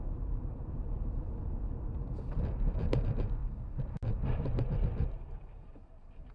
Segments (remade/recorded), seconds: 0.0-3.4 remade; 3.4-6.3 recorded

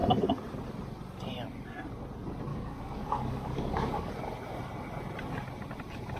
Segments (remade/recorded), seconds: 0.0-2.5 recorded; 2.5-4.1 remade; 4.1-6.2 recorded

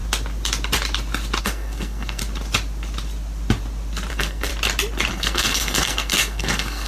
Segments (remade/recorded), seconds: 0.0-1.4 recorded; 1.4-2.2 remade; 2.2-4.1 recorded; 4.1-4.5 remade; 4.5-5.1 recorded; 5.1-6.9 remade

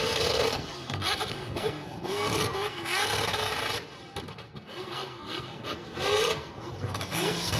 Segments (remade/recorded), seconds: 0.0-3.5 remade; 3.5-4.3 recorded; 4.3-7.6 remade

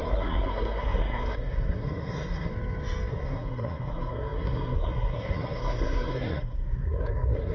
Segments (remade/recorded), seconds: 0.0-2.5 remade; 2.5-3.1 recorded; 3.1-7.5 remade

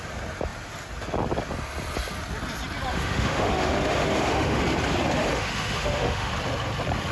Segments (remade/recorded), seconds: 0.0-2.9 recorded; 2.9-4.6 remade; 4.6-5.3 recorded; 5.3-6.3 remade; 6.3-7.1 recorded